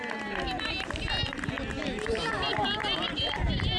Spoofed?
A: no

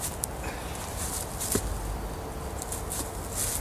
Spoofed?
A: no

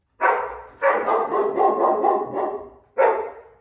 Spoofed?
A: no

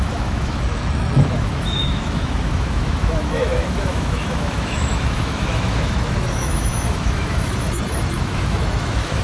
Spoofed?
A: yes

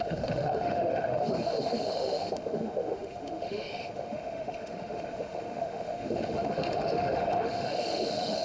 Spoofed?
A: yes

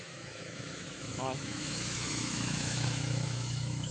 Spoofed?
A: yes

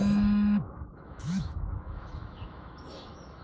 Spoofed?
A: yes